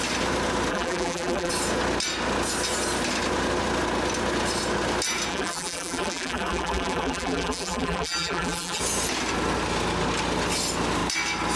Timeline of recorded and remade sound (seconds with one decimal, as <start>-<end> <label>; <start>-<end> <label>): 0.0-0.7 recorded; 0.7-1.5 remade; 1.5-5.3 recorded; 5.3-8.8 remade; 8.8-11.6 recorded